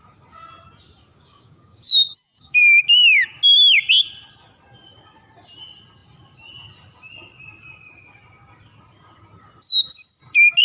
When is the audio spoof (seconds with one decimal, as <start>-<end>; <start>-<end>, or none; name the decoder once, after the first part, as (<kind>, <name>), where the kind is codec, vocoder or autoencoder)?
1.1-2.6 (codec, DAC)